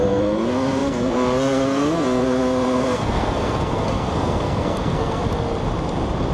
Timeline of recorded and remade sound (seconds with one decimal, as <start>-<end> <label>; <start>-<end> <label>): 0.0-5.2 remade; 5.2-6.3 recorded